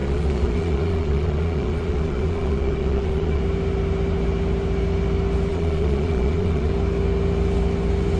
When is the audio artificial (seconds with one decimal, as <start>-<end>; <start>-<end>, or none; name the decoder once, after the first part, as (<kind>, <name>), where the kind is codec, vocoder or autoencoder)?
0.0-3.4 (vocoder, Vocos); 5.5-6.7